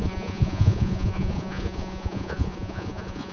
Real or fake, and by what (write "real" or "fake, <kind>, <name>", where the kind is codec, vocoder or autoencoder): fake, vocoder, Vocos